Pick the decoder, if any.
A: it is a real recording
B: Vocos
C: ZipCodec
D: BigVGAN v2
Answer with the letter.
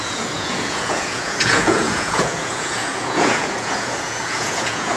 B